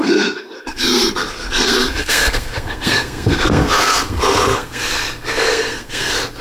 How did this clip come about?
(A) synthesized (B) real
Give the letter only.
A